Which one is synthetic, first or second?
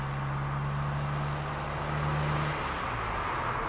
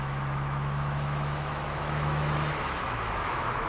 second